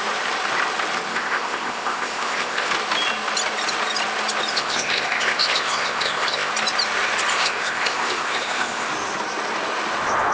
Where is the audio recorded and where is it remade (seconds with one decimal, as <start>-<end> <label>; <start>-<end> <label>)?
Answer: 0.0-1.1 recorded; 1.1-2.7 remade; 2.7-4.5 recorded; 4.5-6.5 remade; 6.5-7.3 recorded; 7.3-8.9 remade; 8.9-10.3 recorded